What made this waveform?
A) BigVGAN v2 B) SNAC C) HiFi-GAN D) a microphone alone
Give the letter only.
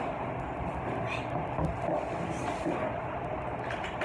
D